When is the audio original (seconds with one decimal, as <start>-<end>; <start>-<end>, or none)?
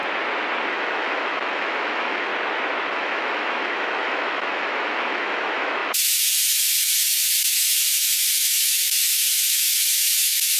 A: 0.0-0.7; 2.3-2.9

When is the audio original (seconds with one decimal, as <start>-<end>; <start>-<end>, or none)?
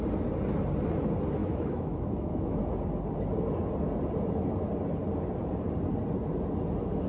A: 0.0-1.4; 2.6-7.1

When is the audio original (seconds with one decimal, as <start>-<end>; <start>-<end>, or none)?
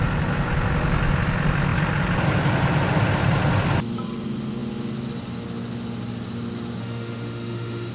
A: 0.0-6.8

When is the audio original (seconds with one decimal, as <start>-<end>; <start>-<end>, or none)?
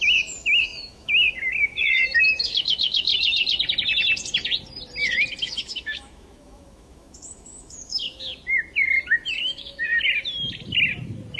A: 3.1-5.4; 8.3-9.3; 9.9-11.4